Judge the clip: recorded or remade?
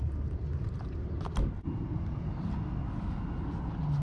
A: recorded